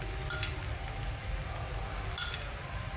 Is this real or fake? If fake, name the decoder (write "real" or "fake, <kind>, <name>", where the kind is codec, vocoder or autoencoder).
real